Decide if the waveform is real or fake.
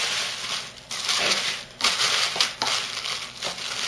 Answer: real